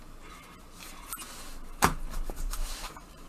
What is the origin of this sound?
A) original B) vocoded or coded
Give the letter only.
A